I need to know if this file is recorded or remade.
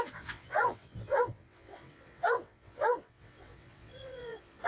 remade